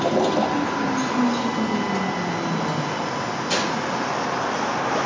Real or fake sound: real